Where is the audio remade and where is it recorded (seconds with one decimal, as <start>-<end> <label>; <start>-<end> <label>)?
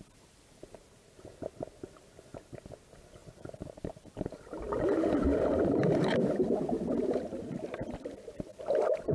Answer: 0.0-3.2 recorded; 3.2-6.6 remade; 6.6-9.1 recorded